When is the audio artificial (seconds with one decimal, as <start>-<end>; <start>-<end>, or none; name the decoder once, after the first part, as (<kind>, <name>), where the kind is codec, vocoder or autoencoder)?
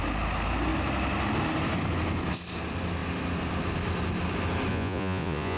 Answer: 4.7-5.6 (vocoder, Vocos)